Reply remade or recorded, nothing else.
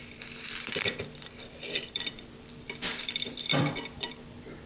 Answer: remade